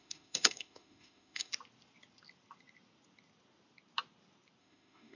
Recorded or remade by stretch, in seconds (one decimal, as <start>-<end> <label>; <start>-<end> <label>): 0.0-1.5 remade; 1.5-4.6 recorded; 4.6-5.2 remade